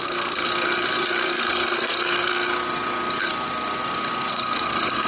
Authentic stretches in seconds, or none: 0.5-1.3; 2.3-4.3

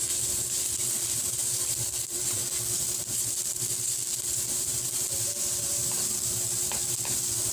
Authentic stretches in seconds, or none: none